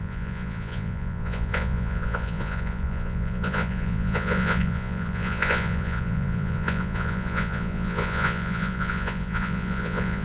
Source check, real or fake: fake